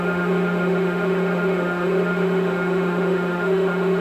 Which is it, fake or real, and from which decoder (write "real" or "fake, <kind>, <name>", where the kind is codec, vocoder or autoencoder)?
fake, autoencoder, DAC-VAE